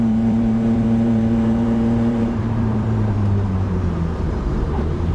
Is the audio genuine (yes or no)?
no